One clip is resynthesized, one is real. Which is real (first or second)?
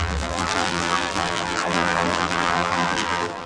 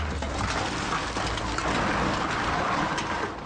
second